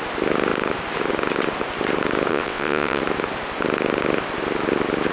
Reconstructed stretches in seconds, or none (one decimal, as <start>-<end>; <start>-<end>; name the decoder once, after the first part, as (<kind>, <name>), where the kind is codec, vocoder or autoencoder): 2.3-3.0 (vocoder, WaveNeXt)

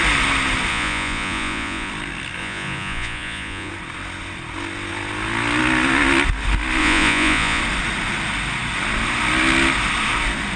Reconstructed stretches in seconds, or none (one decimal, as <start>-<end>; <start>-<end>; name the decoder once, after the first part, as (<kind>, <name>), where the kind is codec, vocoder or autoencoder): 0.7-1.9 (vocoder, Vocos); 2.4-3.7; 6.8-7.6

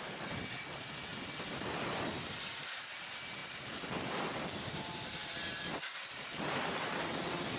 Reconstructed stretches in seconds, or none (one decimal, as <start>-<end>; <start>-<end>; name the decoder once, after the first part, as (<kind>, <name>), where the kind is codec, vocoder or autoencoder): 1.1-1.7 (vocoder, BigVGAN v2); 3.4-3.9; 5.2-7.6

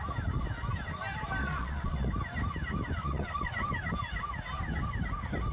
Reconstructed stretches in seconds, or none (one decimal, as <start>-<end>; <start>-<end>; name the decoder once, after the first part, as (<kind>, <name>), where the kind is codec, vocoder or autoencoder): 1.4-2.1 (vocoder, Vocos); 3.0-3.5

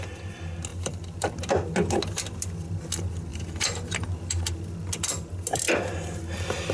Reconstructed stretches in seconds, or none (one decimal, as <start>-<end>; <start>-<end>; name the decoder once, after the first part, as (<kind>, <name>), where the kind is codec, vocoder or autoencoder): 0.7-1.3 (vocoder, BigVGAN v2); 3.3-4.6